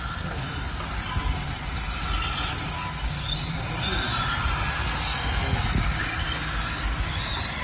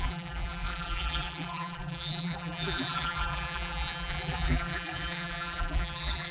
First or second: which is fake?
second